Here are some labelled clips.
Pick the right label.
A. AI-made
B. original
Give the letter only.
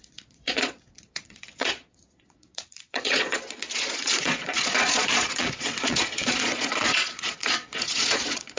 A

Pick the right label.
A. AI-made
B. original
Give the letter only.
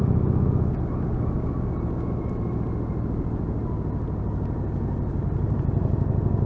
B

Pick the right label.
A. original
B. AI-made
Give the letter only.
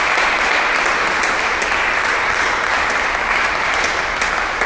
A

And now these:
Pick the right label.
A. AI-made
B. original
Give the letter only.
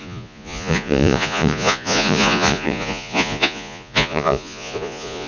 A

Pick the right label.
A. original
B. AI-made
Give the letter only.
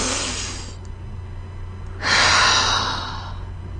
A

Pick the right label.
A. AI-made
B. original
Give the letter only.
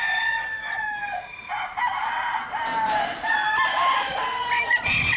B